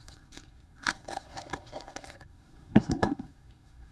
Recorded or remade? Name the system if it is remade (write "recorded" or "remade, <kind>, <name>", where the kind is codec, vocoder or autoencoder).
remade, codec, SNAC